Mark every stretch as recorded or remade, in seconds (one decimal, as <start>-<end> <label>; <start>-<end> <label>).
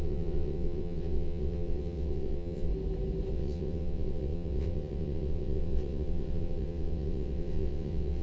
0.0-2.7 remade; 2.7-3.3 recorded; 3.3-8.2 remade